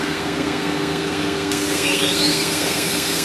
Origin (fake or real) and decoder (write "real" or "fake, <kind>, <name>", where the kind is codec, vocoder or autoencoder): fake, codec, SNAC